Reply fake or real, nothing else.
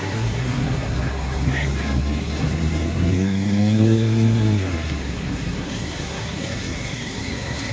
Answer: fake